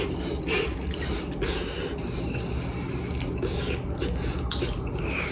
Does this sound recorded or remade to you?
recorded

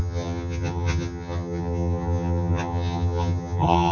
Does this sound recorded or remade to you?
remade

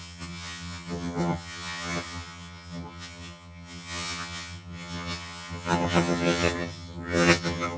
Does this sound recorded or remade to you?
remade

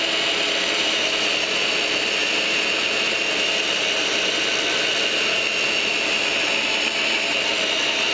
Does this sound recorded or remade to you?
recorded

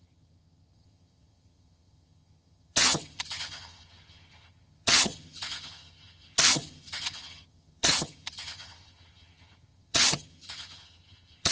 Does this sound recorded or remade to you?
remade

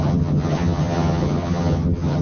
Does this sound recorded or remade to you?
remade